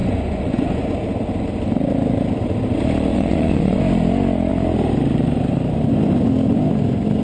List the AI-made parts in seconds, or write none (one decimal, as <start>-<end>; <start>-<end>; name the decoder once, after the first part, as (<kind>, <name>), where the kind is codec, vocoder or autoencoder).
0.0-0.8 (vocoder, Vocos); 3.1-3.8